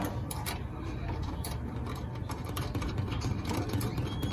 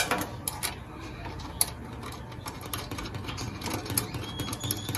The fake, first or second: first